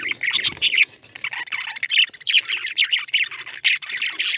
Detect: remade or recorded recorded